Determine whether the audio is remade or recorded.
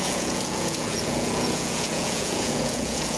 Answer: remade